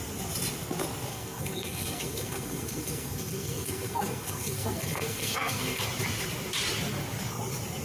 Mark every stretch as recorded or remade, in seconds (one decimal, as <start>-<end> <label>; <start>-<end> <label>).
0.0-1.1 recorded; 1.1-5.8 remade; 5.8-7.8 recorded